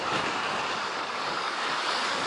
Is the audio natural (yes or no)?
no